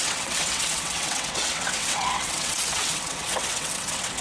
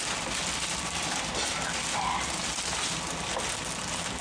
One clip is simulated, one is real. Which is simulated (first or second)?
first